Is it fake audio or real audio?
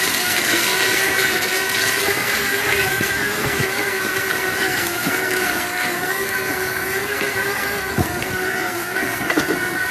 fake